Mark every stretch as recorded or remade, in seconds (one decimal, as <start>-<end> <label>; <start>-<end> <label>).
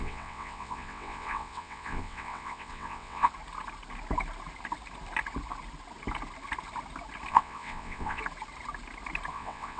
0.0-3.3 remade; 3.3-7.3 recorded; 7.3-8.2 remade; 8.2-9.3 recorded; 9.3-9.8 remade